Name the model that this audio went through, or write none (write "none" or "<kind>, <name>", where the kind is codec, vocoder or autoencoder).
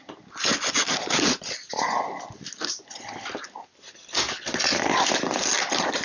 none